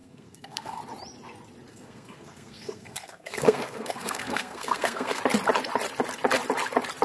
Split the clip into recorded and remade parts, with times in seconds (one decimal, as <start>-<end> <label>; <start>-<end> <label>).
0.0-0.8 remade; 0.8-1.7 recorded; 1.7-5.2 remade; 5.2-7.0 recorded